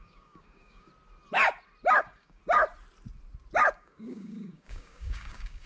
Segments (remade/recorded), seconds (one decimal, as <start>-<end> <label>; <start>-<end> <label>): 0.0-0.9 remade; 0.9-2.0 recorded; 2.0-2.4 remade; 2.4-3.7 recorded; 3.7-5.7 remade